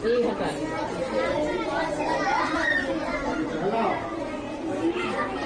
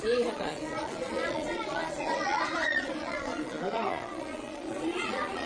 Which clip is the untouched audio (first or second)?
first